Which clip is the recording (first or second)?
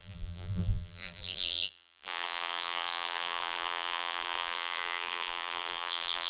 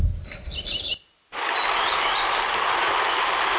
second